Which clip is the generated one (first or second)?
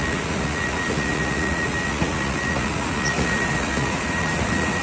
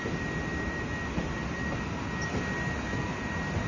first